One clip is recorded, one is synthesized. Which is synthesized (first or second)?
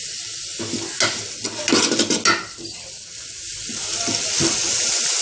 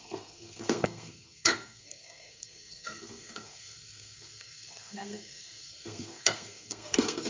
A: second